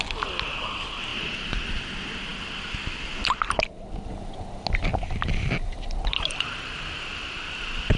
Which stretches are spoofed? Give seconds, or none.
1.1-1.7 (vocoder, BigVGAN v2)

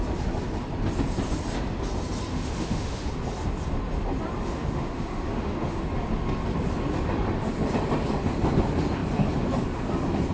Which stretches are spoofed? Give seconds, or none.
2.3-3.1 (autoencoder, DAC-VAE); 4.4-5.8

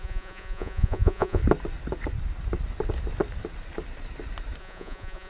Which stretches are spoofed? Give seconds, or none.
0.0-1.4 (vocoder, Vocos); 4.6-5.3

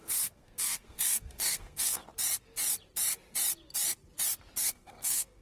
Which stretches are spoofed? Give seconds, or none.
0.0-2.0 (codec, SNAC); 4.6-5.4

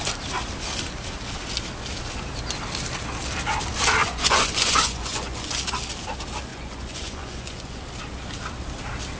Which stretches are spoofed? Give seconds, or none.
4.0-5.6 (vocoder, Vocos); 6.5-7.8